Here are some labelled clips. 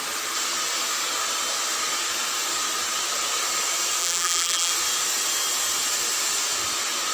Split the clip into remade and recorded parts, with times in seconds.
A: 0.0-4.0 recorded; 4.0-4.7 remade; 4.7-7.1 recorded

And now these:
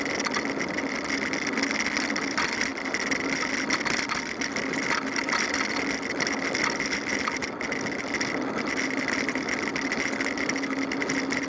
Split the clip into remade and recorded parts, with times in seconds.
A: 0.0-11.5 recorded

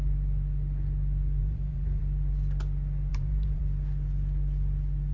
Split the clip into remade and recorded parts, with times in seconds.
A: 0.0-1.4 recorded; 1.4-2.0 remade; 2.0-3.1 recorded; 3.1-3.6 remade; 3.6-5.1 recorded